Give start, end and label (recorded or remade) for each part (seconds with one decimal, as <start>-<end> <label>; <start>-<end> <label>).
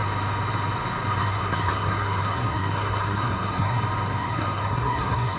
0.0-1.2 recorded; 1.2-3.8 remade; 3.8-4.2 recorded; 4.2-5.4 remade